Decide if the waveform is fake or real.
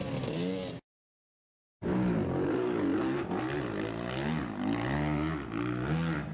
real